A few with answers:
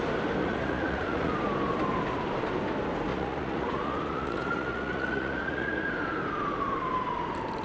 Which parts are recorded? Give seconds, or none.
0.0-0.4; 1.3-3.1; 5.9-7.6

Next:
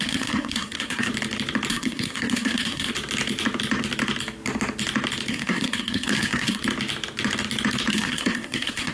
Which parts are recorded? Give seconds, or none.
1.1-1.7; 2.9-5.3; 6.6-7.9